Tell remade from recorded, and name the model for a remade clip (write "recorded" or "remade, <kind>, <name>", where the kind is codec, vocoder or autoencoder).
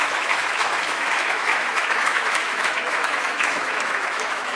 remade, autoencoder, DAC-VAE